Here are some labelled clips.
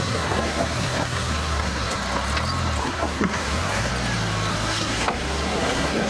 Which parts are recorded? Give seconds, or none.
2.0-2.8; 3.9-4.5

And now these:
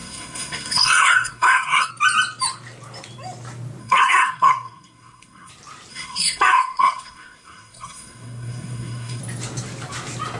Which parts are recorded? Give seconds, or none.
1.9-3.8; 5.5-5.9; 9.2-10.4

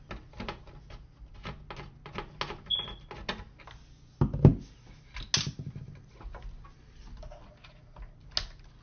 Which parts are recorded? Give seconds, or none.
0.0-8.8

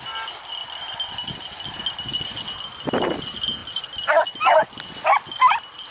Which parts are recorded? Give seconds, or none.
0.0-0.6; 2.2-5.9

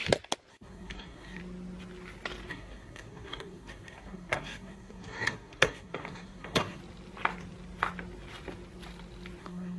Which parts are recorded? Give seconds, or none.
0.0-0.5; 1.4-2.5; 6.8-9.4

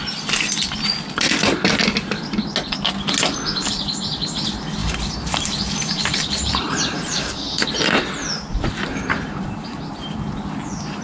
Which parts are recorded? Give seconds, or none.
0.0-4.8; 7.7-8.5; 9.8-11.0